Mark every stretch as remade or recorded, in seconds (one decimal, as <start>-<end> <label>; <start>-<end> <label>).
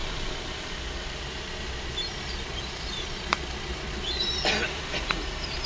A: 0.0-0.7 remade; 0.7-2.1 recorded; 2.1-5.0 remade; 5.0-5.7 recorded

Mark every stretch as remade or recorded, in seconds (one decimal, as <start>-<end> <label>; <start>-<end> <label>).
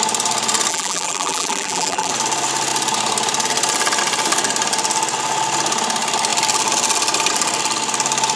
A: 0.0-0.7 recorded; 0.7-2.1 remade; 2.1-8.4 recorded